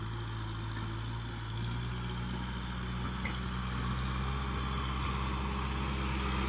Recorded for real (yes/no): yes